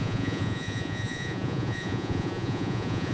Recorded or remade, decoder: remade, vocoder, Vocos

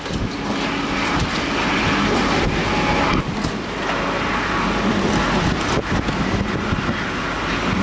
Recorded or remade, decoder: recorded